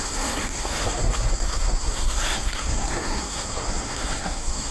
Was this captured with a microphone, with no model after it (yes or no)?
no